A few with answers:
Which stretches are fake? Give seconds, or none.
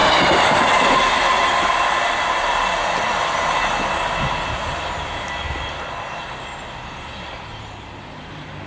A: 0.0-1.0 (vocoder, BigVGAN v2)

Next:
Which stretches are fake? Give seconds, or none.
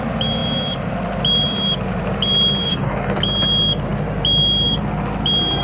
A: 2.6-3.2 (codec, DAC)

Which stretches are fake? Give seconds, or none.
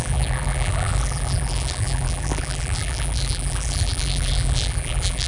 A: 0.0-5.3 (vocoder, BigVGAN v2)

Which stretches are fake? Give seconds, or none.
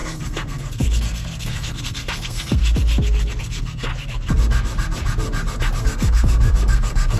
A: 0.0-2.6 (codec, SNAC); 3.4-3.9; 5.8-7.2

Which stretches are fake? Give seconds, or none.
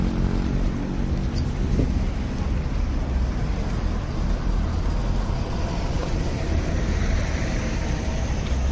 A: 6.0-8.1 (vocoder, BigVGAN v2)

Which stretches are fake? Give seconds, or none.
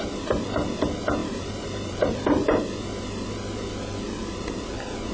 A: 1.2-2.6 (vocoder, BigVGAN v2); 4.2-5.1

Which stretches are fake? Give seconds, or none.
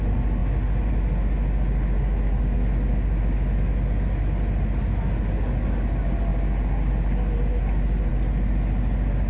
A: none